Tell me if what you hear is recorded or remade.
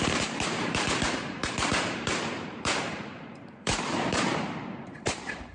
remade